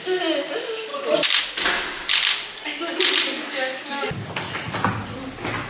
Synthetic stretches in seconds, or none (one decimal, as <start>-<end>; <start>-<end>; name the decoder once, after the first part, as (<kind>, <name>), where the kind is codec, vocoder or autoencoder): none